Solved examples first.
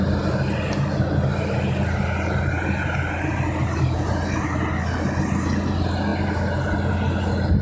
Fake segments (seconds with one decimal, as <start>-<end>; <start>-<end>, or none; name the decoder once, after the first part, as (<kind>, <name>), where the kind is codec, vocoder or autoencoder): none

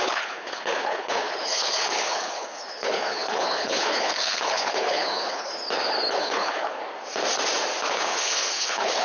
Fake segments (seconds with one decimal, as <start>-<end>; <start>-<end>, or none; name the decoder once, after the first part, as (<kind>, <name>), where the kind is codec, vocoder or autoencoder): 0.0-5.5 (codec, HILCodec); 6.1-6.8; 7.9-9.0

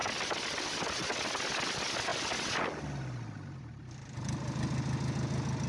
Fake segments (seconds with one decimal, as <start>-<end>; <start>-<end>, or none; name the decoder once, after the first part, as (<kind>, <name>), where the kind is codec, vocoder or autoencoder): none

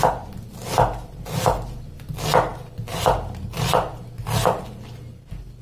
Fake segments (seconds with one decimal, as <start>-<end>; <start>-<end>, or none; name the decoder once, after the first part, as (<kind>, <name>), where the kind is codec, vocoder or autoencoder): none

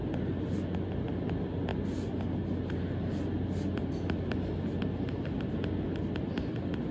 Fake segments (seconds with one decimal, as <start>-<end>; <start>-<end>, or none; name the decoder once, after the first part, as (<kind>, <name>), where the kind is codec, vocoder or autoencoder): none

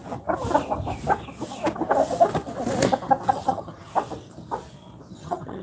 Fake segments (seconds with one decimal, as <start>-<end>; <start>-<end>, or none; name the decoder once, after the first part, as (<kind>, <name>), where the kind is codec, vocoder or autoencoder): 3.3-3.9 (vocoder, HiFi-GAN); 5.1-5.6

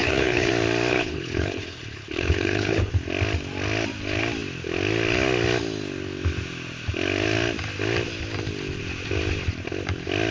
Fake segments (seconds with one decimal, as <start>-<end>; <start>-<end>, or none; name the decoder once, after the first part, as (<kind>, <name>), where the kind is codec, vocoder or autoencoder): 0.0-0.5 (codec, HILCodec); 0.9-2.9

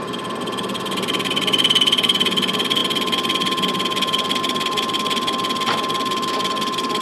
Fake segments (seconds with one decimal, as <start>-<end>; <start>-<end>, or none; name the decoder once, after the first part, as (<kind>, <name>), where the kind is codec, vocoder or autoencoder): none